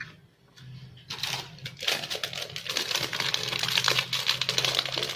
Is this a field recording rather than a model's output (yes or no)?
yes